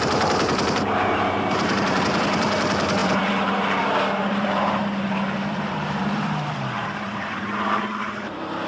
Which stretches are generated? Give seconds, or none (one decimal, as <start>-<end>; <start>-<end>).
0.0-8.7

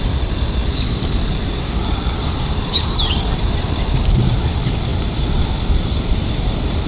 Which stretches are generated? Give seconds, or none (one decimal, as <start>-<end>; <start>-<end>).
0.0-0.6; 4.1-6.9

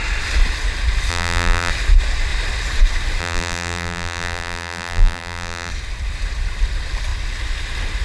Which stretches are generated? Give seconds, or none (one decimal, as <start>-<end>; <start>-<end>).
1.1-1.7; 3.2-5.7